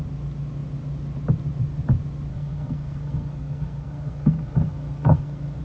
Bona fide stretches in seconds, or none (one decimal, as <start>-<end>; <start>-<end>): 0.0-2.3